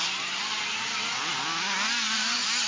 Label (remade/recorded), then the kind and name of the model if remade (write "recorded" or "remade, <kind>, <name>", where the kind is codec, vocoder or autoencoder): recorded